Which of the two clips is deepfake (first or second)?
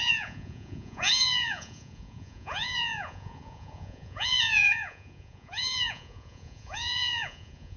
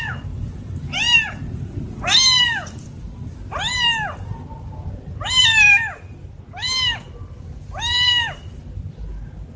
first